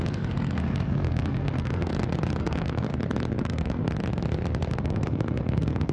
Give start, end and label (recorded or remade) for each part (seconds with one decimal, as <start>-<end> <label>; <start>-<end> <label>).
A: 0.0-1.9 remade; 1.9-2.4 recorded; 2.4-2.9 remade; 2.9-3.4 recorded; 3.4-3.8 remade; 3.8-4.7 recorded; 4.7-5.9 remade